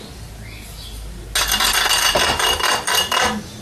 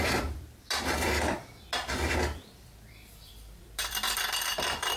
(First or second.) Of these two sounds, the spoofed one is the second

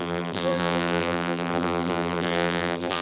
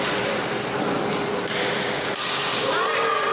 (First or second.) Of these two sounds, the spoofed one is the first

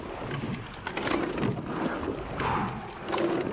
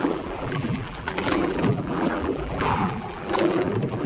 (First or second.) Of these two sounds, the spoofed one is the second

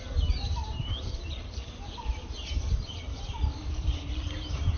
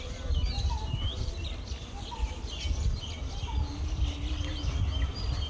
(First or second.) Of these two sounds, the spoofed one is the first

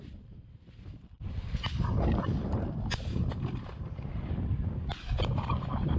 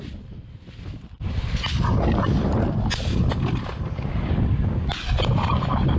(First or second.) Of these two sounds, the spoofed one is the first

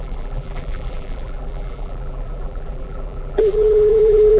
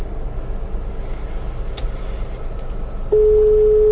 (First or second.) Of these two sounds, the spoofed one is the first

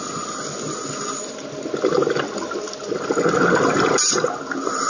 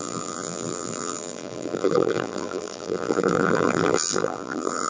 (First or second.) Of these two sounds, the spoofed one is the second